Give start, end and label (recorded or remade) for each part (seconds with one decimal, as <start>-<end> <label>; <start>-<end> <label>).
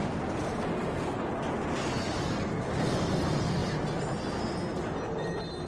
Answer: 0.0-5.7 recorded